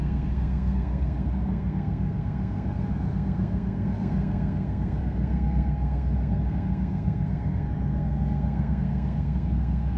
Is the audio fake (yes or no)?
yes